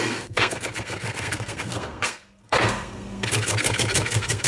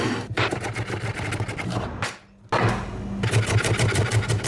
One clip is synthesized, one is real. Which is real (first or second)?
second